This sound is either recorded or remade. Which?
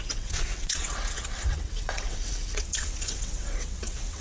remade